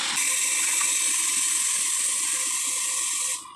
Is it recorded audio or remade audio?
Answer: recorded